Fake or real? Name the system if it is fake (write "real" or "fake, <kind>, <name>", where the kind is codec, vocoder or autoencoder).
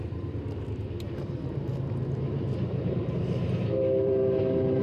fake, vocoder, BigVGAN v2